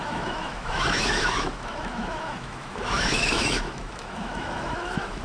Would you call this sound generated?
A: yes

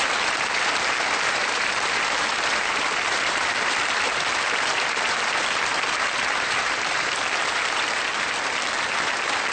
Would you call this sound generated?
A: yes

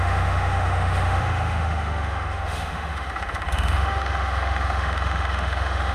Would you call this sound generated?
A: yes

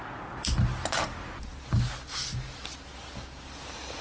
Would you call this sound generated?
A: no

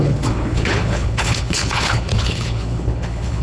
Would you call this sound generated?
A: yes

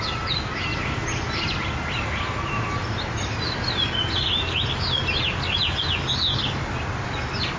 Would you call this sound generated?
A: no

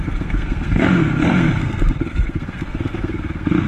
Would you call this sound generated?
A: yes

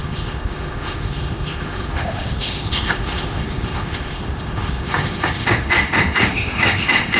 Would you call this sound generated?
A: yes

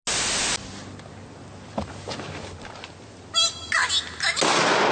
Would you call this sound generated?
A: no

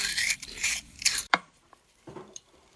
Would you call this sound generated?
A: yes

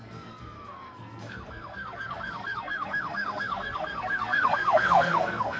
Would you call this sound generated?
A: yes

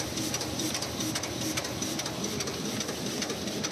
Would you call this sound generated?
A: no